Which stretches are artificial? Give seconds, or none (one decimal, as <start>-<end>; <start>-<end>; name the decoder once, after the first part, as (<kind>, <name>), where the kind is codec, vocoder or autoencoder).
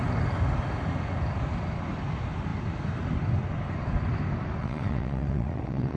4.6-6.0 (vocoder, WaveNeXt)